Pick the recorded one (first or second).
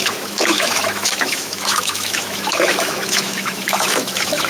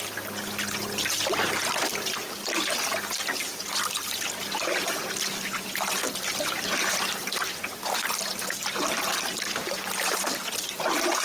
second